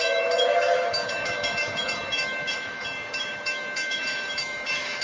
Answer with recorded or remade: remade